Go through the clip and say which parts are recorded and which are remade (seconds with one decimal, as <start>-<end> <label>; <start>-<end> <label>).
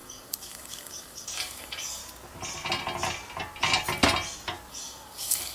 0.0-2.0 remade; 2.0-4.7 recorded; 4.7-5.5 remade